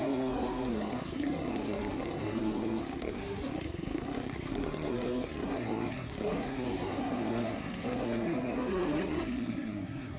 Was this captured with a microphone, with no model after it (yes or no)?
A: no